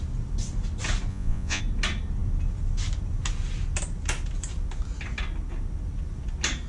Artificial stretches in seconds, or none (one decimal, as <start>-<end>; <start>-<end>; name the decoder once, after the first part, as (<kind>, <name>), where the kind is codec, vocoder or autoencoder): 1.1-1.6 (vocoder, Vocos)